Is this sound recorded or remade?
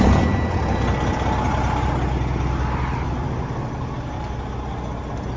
recorded